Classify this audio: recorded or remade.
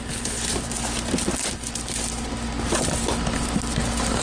recorded